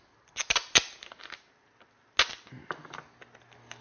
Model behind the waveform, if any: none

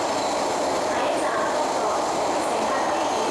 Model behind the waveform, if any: none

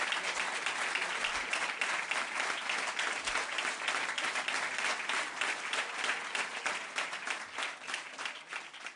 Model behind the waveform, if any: none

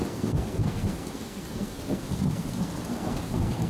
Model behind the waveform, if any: codec, SNAC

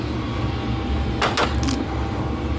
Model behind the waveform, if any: none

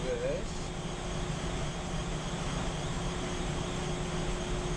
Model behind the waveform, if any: none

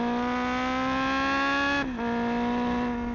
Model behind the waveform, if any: none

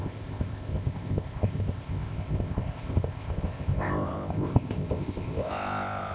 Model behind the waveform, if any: codec, ZipCodec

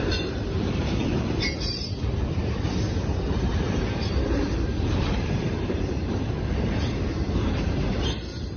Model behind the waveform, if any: vocoder, BigVGAN v2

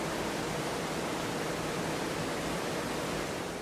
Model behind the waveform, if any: vocoder, BigVGAN v2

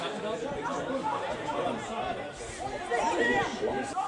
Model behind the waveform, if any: none